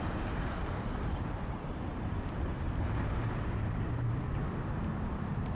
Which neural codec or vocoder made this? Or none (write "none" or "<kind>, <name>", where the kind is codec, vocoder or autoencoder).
vocoder, BigVGAN v2